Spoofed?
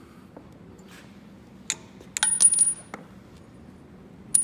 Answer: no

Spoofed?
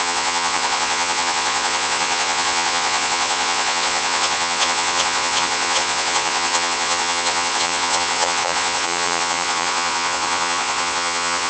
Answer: yes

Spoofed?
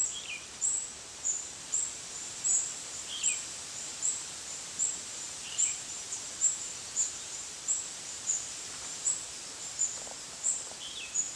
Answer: yes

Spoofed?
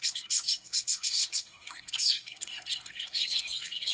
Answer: yes